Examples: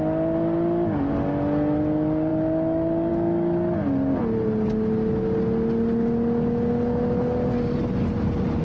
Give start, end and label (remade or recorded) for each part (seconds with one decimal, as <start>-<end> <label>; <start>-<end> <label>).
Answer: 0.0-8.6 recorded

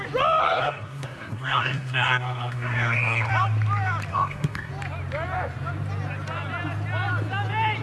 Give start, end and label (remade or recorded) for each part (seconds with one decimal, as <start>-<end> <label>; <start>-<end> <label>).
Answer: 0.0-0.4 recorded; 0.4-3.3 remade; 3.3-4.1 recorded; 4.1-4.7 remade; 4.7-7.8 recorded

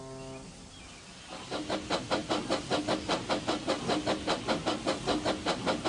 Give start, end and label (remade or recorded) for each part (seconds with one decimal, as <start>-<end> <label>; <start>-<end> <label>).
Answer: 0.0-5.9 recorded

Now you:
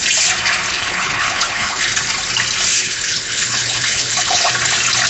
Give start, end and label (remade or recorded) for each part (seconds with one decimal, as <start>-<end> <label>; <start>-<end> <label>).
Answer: 0.0-0.7 recorded; 0.7-1.8 remade; 1.8-2.7 recorded; 2.7-4.5 remade; 4.5-5.1 recorded

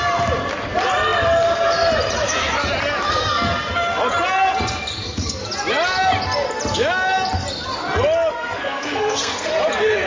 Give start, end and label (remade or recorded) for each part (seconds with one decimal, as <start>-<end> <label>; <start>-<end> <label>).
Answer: 0.0-8.3 recorded; 8.3-9.5 remade; 9.5-10.1 recorded